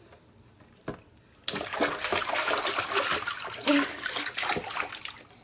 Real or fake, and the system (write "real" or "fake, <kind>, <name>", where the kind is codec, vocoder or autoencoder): real